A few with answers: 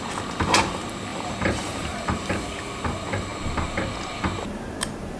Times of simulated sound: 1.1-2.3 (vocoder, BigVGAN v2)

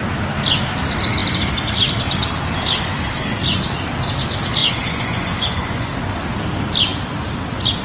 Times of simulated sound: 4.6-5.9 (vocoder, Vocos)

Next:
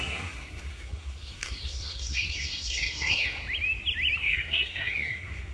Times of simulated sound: 0.0-3.4 (codec, SNAC); 4.2-5.5

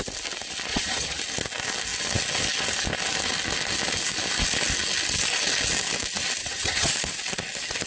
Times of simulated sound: 0.7-1.2 (vocoder, HiFi-GAN); 6.4-6.9

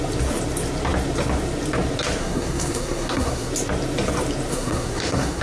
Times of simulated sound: 2.2-3.5 (codec, SNAC); 4.5-5.4

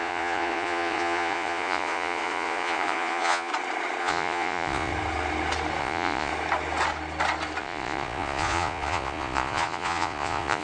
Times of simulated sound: 0.0-3.5 (vocoder, Vocos); 4.0-4.9; 5.8-6.3; 7.6-10.6

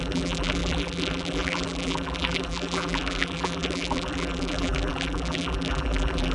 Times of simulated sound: 0.0-6.3 (vocoder, BigVGAN v2)